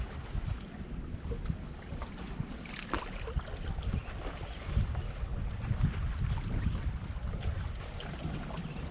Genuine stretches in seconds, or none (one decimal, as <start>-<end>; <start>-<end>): 0.0-8.9